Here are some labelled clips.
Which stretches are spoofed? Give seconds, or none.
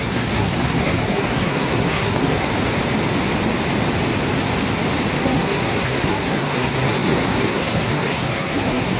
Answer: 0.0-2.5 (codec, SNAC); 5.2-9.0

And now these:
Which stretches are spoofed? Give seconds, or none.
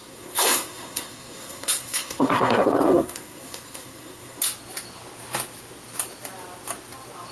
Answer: 0.0-4.4 (codec, SNAC)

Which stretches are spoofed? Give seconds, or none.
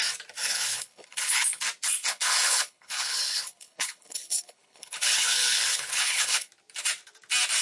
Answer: 0.4-1.6 (codec, HILCodec); 2.0-6.5